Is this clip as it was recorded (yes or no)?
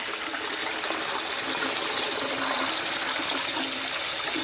yes